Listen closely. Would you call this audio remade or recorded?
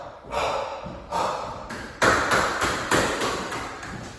recorded